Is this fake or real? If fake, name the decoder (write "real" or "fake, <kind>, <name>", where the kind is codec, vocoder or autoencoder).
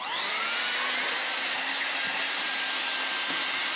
real